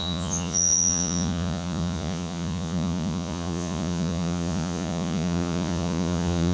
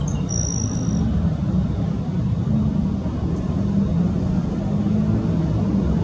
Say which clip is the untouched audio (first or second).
second